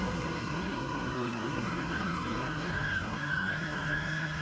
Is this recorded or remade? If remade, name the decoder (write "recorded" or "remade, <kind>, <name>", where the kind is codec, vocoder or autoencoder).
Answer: remade, codec, SNAC